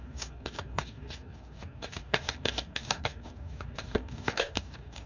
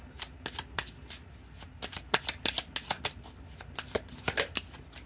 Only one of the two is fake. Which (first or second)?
first